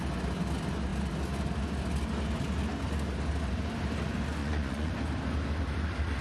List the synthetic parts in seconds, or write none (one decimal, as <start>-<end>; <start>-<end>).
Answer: 4.4-4.9